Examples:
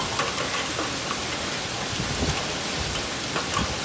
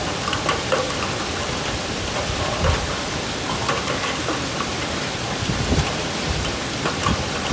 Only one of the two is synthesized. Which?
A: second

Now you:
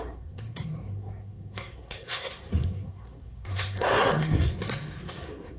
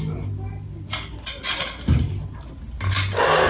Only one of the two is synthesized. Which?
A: first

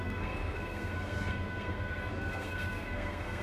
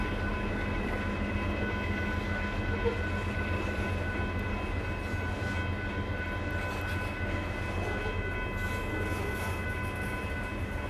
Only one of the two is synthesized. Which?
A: first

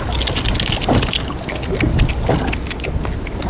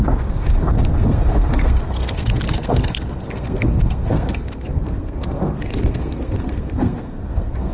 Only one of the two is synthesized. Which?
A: second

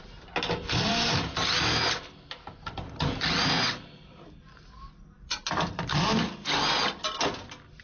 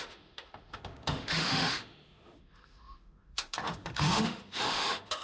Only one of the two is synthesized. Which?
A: second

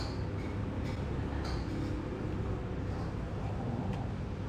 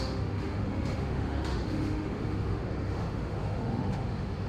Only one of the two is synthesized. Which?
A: second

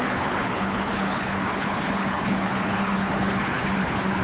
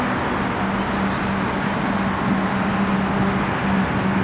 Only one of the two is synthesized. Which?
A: first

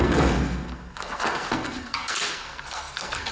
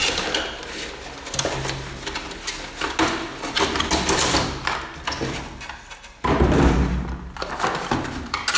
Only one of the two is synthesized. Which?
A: first